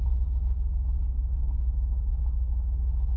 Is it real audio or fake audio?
real